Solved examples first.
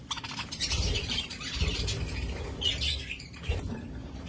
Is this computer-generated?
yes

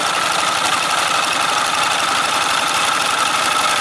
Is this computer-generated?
no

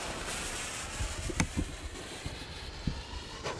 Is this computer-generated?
no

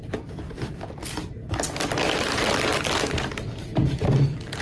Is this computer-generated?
no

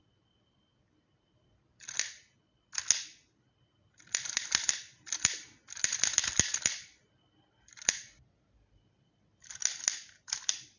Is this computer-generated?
no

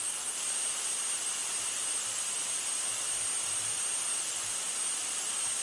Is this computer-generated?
no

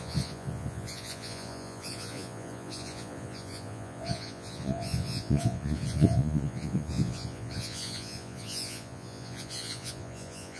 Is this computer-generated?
yes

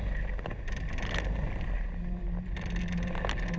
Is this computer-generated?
no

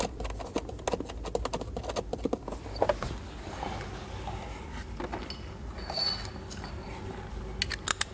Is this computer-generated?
no